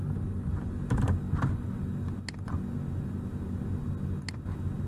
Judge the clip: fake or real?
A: real